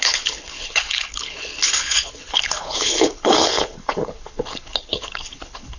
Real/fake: fake